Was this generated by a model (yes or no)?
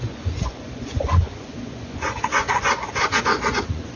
yes